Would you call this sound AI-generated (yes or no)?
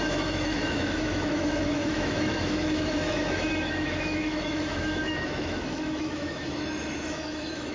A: yes